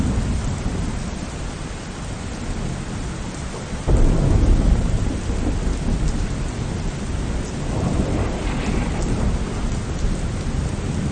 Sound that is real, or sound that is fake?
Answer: real